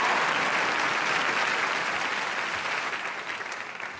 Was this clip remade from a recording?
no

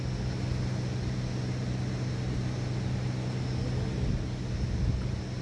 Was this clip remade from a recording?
no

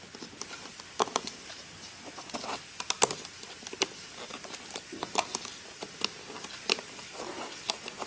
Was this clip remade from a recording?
no